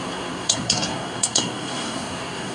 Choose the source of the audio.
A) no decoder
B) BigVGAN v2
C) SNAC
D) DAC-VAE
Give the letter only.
C